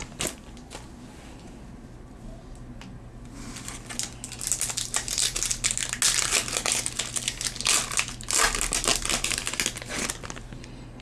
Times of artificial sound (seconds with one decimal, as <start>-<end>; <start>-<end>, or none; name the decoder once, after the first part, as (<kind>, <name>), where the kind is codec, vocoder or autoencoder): none